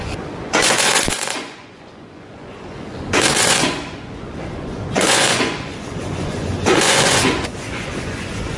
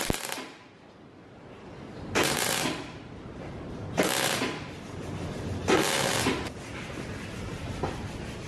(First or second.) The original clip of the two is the second